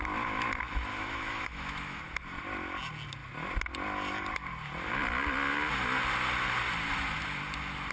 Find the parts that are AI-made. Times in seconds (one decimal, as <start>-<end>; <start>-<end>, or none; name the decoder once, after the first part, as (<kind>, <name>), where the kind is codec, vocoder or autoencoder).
0.9-2.0 (autoencoder, DAC-VAE)

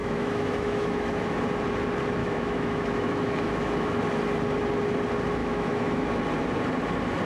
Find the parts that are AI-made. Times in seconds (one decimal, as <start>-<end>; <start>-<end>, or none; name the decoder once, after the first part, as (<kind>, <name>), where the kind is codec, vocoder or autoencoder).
0.0-1.4 (autoencoder, DAC-VAE); 2.2-4.0; 5.4-6.2

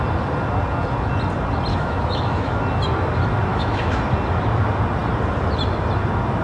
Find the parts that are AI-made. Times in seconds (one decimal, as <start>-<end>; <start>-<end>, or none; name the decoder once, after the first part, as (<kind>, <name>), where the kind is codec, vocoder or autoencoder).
1.7-2.6 (autoencoder, DAC-VAE); 3.5-4.0

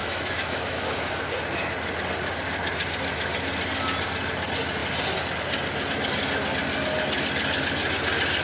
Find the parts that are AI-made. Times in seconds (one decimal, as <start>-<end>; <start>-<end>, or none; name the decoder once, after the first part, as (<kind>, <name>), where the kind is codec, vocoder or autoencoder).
0.0-1.1 (autoencoder, DAC-VAE)

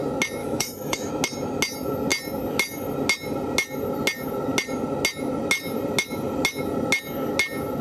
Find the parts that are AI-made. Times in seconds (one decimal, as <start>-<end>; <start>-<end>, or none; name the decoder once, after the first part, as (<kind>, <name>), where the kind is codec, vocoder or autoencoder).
0.4-1.1 (autoencoder, DAC-VAE)

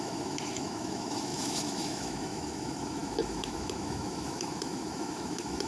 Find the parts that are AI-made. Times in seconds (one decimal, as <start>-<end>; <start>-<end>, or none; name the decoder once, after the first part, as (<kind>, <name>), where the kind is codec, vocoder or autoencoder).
0.0-5.7 (autoencoder, DAC-VAE)

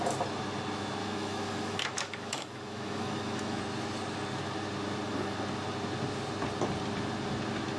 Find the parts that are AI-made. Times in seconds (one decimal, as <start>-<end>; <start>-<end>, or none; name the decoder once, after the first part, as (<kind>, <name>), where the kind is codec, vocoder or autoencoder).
1.0-3.6 (autoencoder, DAC-VAE)